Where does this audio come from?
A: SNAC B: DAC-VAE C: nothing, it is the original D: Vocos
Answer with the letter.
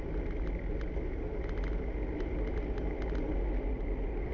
C